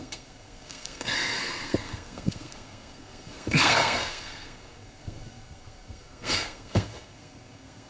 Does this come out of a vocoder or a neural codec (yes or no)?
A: yes